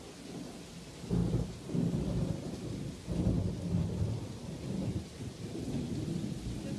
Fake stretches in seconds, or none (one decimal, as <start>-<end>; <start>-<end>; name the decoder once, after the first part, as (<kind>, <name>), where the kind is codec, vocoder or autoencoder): none